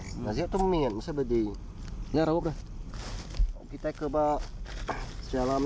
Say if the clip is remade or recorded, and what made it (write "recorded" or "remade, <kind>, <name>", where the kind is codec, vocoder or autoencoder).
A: recorded